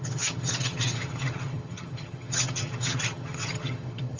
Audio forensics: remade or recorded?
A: remade